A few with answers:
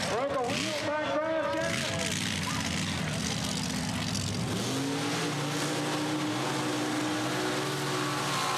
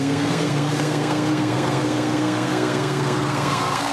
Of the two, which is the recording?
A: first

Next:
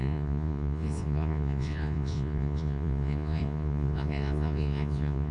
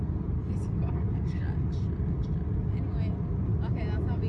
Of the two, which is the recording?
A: second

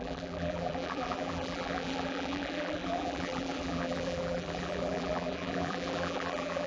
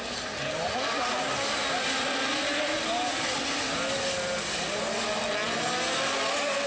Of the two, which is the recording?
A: second